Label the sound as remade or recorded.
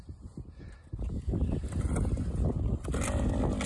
recorded